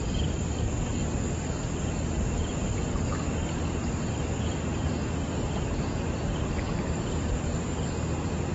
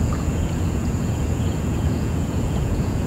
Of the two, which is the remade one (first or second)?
second